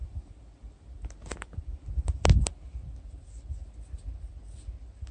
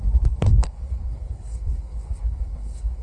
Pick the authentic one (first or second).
first